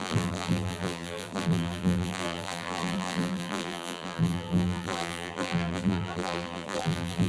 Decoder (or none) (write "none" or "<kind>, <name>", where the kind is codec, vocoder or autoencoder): vocoder, BigVGAN v2